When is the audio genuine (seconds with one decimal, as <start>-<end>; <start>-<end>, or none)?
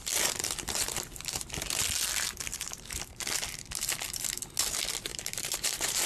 0.0-2.5; 3.2-5.1